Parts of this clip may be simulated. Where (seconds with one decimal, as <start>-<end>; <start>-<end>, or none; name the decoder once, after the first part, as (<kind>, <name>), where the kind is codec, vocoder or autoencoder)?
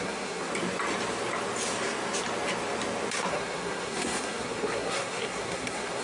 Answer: 0.0-0.5 (codec, SNAC); 3.3-6.0